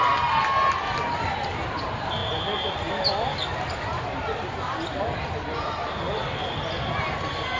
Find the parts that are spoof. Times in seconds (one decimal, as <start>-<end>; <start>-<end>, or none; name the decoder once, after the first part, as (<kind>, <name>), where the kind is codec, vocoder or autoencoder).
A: none